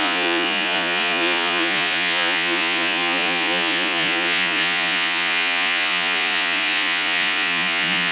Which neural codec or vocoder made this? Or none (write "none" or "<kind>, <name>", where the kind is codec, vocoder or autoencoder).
vocoder, Vocos